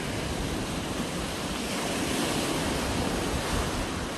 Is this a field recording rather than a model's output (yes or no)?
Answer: yes